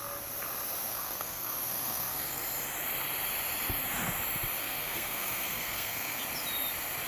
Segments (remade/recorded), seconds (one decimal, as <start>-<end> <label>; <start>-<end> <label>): 0.0-0.9 recorded; 0.9-2.4 remade; 2.4-4.6 recorded; 4.6-6.2 remade; 6.2-7.1 recorded